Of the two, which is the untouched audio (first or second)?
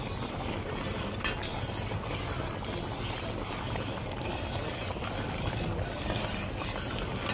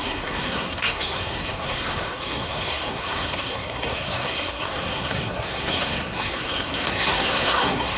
first